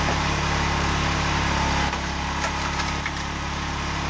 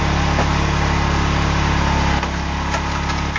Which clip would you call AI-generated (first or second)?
first